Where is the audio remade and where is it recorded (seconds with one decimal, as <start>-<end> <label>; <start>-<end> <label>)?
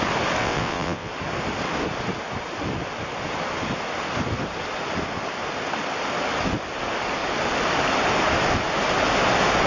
0.0-0.4 recorded; 0.4-1.1 remade; 1.1-9.7 recorded